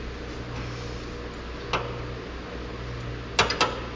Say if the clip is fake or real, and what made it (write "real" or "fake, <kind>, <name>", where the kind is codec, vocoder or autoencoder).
real